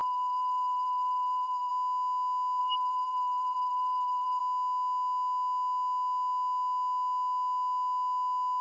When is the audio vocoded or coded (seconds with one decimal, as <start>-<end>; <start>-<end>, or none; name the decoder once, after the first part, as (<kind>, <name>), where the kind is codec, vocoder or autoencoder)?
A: 0.0-1.7 (vocoder, BigVGAN v2); 2.6-4.4